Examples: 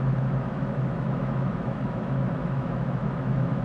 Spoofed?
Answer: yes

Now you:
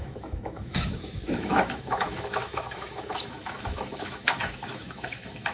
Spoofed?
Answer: yes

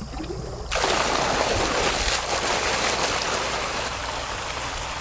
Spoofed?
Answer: no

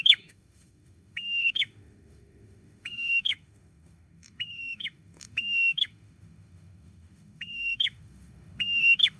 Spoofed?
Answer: yes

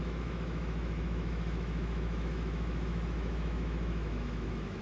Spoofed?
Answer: yes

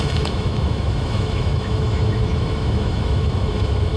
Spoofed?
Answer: yes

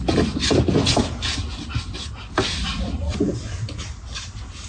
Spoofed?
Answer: no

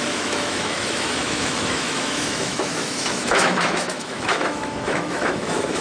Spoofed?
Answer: yes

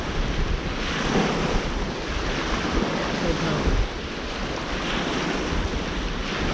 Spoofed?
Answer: no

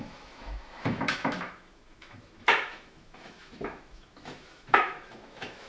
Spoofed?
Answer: yes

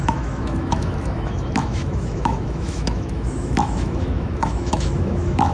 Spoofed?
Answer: yes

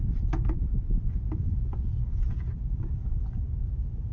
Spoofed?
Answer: no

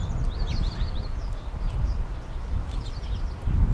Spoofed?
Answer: no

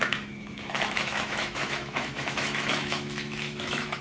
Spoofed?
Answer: yes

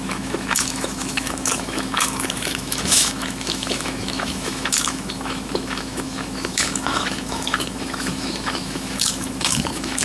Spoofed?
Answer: yes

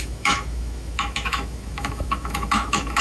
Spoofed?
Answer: yes